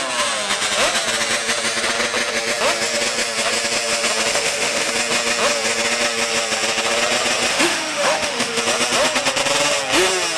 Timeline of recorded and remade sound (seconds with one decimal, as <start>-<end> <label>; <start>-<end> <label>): 0.0-4.3 recorded; 4.3-4.9 remade; 4.9-7.5 recorded; 7.5-8.6 remade; 8.6-10.4 recorded